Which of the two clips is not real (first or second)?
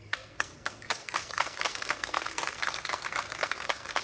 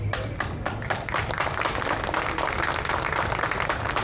first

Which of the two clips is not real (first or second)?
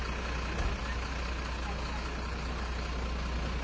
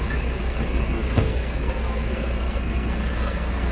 second